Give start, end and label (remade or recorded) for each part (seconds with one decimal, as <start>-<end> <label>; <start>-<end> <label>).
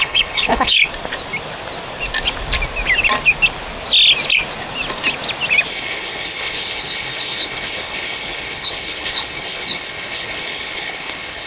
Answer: 0.0-0.8 remade; 0.8-5.7 recorded; 5.7-11.5 remade